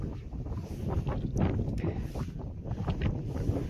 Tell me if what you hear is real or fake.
real